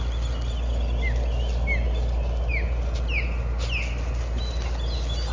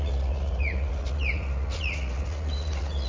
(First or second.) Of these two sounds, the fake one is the second